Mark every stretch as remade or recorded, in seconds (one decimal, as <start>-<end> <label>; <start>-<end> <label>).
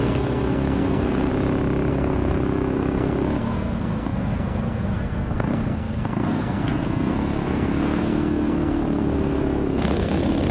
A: 0.0-1.3 remade; 1.3-1.9 recorded; 1.9-10.5 remade